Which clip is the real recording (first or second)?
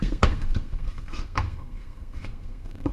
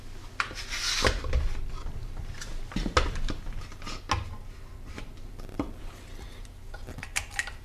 second